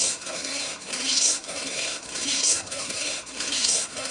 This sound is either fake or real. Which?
fake